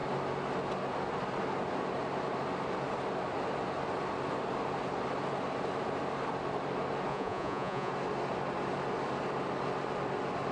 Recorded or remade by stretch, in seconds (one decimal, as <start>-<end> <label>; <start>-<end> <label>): 0.0-7.1 recorded; 7.1-7.9 remade; 7.9-10.5 recorded